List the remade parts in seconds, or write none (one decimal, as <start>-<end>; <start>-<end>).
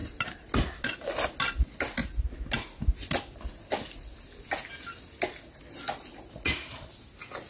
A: none